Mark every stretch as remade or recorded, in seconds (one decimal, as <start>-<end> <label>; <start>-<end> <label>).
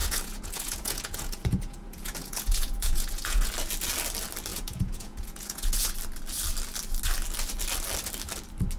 0.0-3.5 remade; 3.5-4.5 recorded; 4.5-5.9 remade; 5.9-8.8 recorded